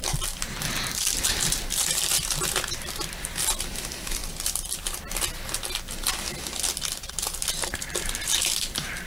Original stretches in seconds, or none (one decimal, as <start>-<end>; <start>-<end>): 4.2-8.2